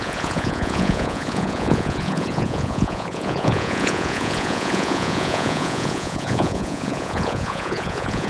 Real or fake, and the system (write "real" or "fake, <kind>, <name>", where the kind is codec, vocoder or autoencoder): fake, vocoder, Vocos